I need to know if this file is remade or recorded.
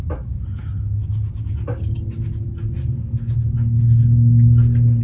recorded